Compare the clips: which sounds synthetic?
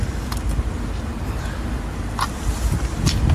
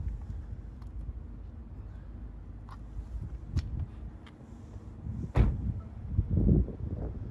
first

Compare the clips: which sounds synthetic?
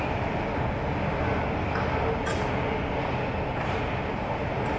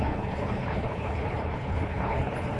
second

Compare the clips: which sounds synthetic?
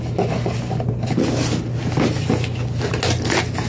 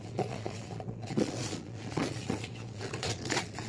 second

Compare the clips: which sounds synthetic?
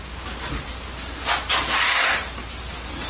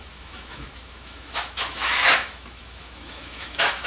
second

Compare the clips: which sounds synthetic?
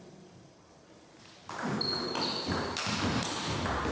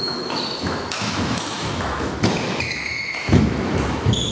second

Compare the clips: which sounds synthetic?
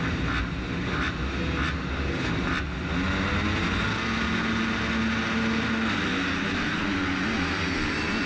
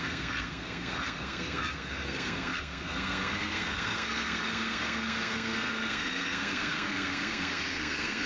second